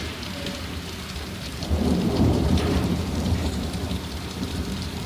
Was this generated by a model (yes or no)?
yes